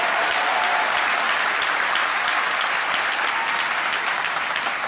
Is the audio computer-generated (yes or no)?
no